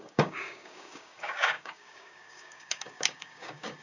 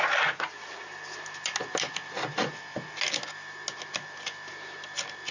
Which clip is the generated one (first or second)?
first